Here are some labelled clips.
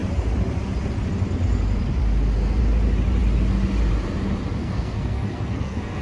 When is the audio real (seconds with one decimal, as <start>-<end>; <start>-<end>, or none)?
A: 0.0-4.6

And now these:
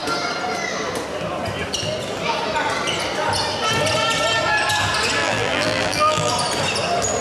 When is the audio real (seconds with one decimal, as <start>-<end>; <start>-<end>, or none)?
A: 0.0-5.2; 6.3-7.2

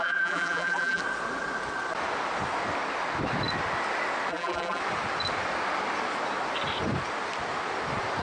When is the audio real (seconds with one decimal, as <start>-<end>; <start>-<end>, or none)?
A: 1.0-4.3; 4.8-8.2

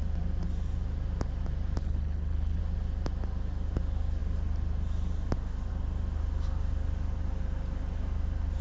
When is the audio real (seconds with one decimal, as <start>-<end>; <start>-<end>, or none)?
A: 0.0-1.8; 2.6-8.6

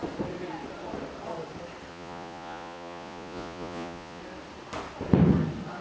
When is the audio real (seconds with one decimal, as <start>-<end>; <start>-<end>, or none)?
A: 0.0-1.9; 4.2-5.8